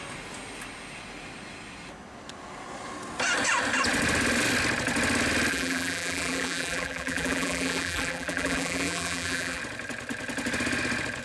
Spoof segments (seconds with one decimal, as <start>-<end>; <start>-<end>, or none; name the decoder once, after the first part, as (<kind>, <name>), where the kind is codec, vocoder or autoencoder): 5.5-9.6 (vocoder, BigVGAN v2)